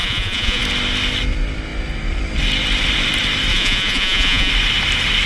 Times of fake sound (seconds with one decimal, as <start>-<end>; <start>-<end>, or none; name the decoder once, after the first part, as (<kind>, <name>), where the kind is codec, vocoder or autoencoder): 0.0-0.6 (vocoder, Vocos); 3.5-4.5